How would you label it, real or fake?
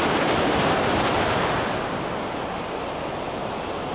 real